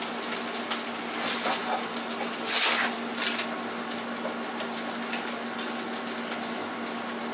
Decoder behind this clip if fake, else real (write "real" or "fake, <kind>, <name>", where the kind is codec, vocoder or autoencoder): real